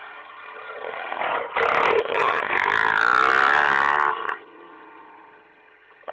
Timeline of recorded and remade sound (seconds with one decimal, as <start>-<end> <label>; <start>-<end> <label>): 0.0-1.2 remade; 1.2-2.0 recorded; 2.0-2.5 remade; 2.5-4.1 recorded; 4.1-6.1 remade